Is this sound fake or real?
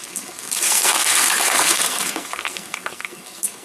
fake